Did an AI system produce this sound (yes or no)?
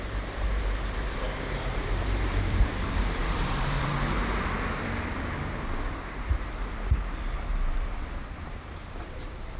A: yes